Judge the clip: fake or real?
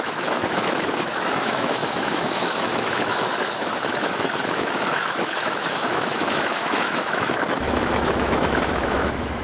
fake